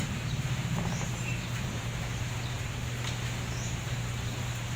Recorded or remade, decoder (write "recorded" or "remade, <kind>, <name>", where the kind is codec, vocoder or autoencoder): remade, vocoder, BigVGAN v2